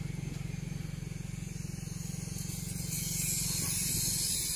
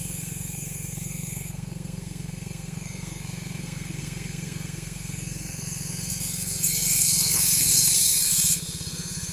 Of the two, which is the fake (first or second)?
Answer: second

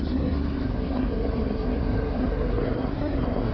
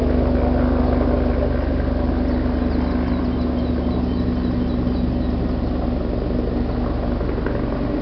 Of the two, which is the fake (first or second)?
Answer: first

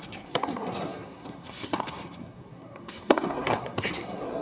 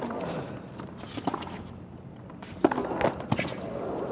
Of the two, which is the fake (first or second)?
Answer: first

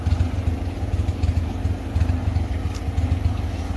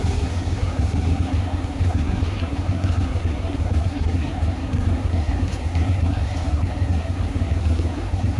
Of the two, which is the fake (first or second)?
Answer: second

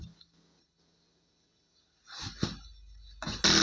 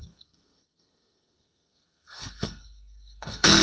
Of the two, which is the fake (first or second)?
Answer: second